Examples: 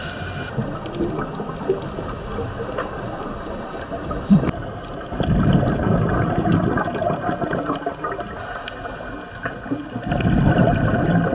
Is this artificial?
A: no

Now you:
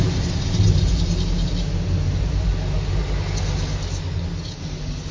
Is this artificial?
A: no